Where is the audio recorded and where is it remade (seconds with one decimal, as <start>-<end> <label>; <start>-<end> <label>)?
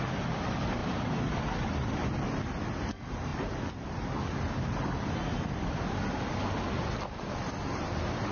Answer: 0.0-0.8 recorded; 0.8-2.2 remade; 2.2-3.3 recorded; 3.3-6.3 remade; 6.3-8.3 recorded